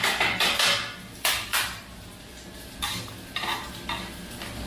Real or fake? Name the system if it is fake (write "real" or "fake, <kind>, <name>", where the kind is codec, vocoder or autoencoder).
real